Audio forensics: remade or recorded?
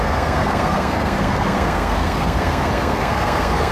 remade